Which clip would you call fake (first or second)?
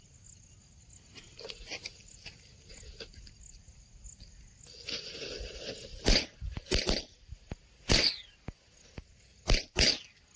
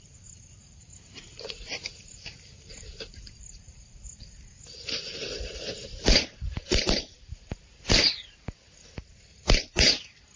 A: second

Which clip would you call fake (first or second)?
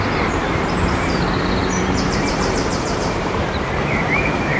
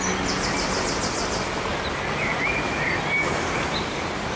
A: first